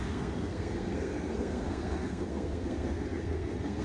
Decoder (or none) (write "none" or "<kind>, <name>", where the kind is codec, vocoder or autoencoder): codec, SNAC